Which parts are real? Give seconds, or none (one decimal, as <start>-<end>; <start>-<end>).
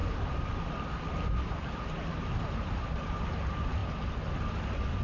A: 0.0-5.0